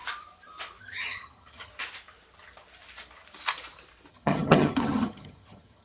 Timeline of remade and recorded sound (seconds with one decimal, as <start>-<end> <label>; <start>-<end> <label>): 0.0-0.8 recorded; 0.8-1.7 remade; 1.7-4.1 recorded; 4.1-5.8 remade

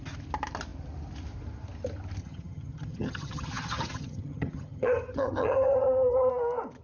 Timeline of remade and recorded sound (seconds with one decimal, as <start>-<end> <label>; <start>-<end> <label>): 0.0-2.2 recorded; 2.2-6.3 remade; 6.3-6.8 recorded

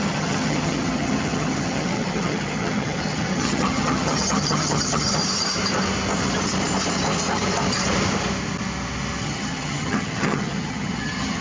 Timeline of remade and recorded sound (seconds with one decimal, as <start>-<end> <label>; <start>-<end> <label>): 0.0-5.2 remade; 5.2-9.2 recorded; 9.2-11.4 remade

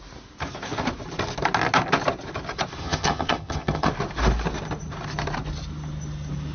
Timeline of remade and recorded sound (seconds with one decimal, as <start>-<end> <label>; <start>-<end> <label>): 0.0-2.8 recorded; 2.8-3.9 remade; 3.9-6.5 recorded

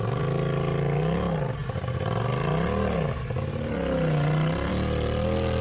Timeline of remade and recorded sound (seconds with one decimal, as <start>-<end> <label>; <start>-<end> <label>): 0.0-5.6 recorded

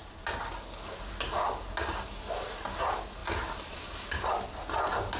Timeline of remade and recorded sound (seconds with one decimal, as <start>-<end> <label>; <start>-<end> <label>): 0.0-5.2 recorded

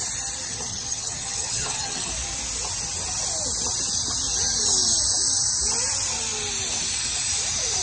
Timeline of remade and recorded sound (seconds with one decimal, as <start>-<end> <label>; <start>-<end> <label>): 0.0-0.7 recorded; 0.7-2.1 remade; 2.1-7.8 recorded

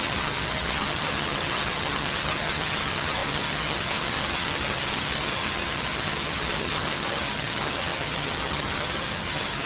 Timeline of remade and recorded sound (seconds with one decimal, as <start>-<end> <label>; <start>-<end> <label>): 0.0-9.7 remade